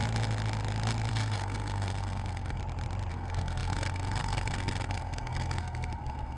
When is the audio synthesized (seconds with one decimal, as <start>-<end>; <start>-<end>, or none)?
1.1-2.6; 3.1-6.4